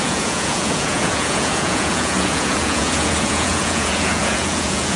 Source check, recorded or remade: remade